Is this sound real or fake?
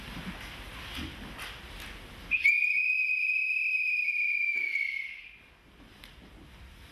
real